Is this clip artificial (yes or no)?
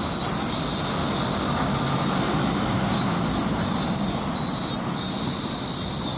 yes